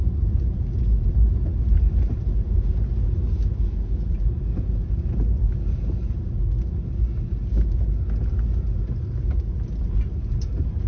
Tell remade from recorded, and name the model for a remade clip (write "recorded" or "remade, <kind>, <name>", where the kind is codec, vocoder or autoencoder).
recorded